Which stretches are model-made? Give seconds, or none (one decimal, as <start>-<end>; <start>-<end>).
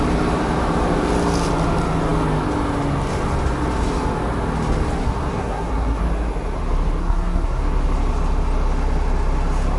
5.0-6.0; 7.0-7.6